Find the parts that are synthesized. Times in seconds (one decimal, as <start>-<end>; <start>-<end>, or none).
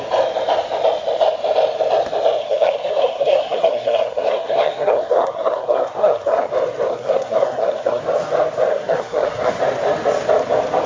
2.4-6.5; 6.9-8.0; 8.7-9.5